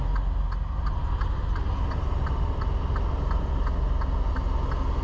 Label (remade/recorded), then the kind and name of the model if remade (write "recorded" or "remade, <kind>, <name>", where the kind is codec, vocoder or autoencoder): recorded